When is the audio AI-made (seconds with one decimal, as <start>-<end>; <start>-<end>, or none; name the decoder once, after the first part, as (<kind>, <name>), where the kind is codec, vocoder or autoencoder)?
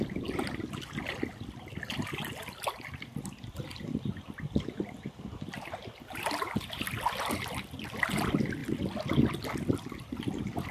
none